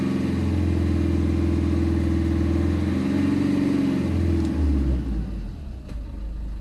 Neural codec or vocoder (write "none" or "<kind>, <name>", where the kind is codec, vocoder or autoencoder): none